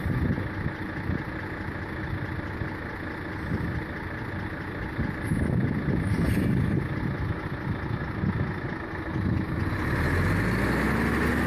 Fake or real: real